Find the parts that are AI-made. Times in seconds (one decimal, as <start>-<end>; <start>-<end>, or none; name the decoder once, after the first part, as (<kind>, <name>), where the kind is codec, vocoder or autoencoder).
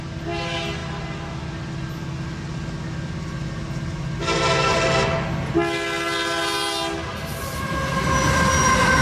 none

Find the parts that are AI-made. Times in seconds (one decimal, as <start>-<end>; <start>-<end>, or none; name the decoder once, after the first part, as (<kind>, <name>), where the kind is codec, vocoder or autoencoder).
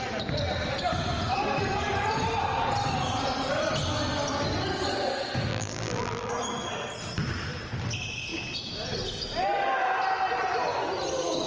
5.5-6.3 (vocoder, BigVGAN v2)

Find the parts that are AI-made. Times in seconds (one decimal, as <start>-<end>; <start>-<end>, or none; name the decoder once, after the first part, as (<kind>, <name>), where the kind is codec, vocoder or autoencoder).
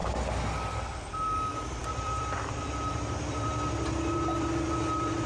0.7-3.5 (vocoder, BigVGAN v2); 4.1-5.3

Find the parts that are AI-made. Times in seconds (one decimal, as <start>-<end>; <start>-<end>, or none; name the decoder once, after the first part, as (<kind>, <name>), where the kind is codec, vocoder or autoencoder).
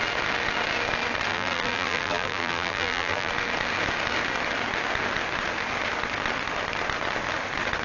1.3-3.3 (vocoder, BigVGAN v2)